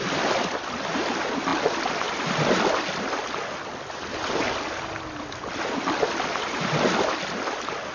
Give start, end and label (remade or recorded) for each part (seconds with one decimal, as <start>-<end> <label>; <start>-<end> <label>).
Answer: 0.0-7.9 recorded